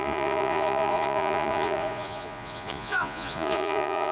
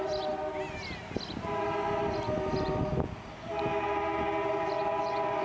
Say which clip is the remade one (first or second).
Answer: first